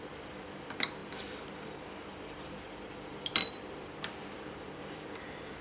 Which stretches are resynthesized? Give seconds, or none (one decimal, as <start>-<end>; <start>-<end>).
0.0-5.6